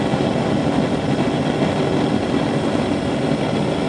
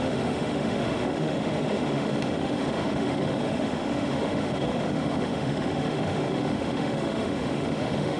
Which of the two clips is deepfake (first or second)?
second